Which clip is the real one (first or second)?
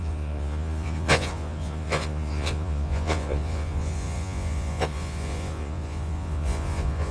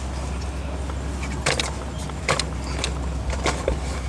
second